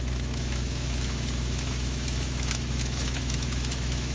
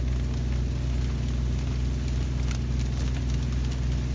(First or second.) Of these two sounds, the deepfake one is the first